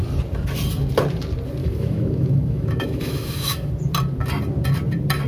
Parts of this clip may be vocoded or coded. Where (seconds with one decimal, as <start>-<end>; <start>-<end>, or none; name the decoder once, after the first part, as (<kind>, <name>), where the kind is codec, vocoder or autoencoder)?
1.6-3.7 (autoencoder, DAC-VAE)